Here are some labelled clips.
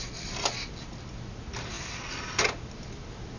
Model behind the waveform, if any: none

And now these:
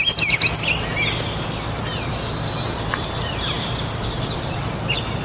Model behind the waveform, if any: none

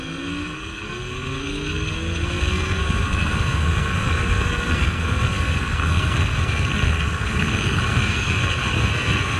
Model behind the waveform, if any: codec, SNAC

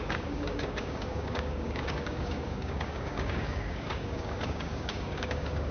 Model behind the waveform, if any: codec, DAC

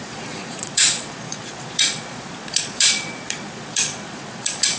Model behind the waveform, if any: vocoder, Vocos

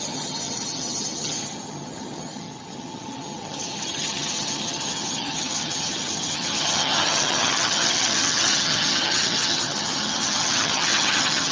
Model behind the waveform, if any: vocoder, HiFi-GAN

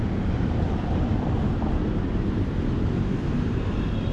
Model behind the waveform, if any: vocoder, BigVGAN v2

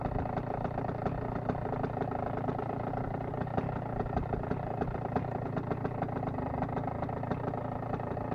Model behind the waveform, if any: none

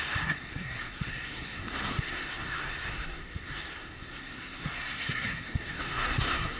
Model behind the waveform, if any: codec, SNAC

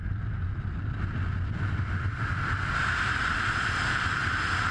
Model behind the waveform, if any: none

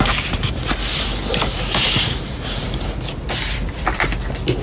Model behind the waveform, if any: none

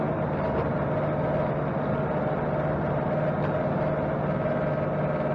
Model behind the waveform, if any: none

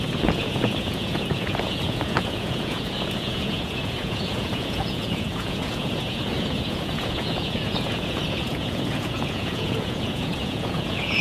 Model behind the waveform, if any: vocoder, Vocos